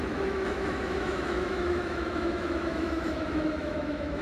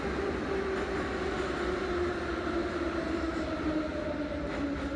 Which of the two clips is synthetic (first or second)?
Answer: first